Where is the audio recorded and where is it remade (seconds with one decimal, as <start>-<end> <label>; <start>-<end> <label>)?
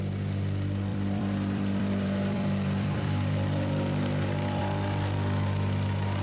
0.0-0.9 recorded; 0.9-4.6 remade; 4.6-6.2 recorded